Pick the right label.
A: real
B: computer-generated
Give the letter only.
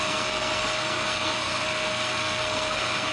B